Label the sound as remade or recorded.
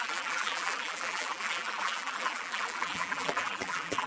remade